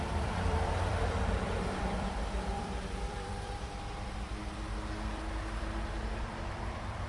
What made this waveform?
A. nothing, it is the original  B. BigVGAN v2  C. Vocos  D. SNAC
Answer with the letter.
B